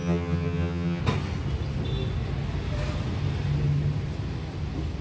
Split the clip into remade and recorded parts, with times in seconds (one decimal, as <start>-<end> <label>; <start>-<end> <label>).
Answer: 0.0-1.0 remade; 1.0-5.0 recorded